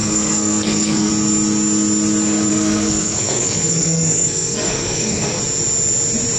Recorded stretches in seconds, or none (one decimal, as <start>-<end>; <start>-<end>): 1.1-2.5; 5.4-6.4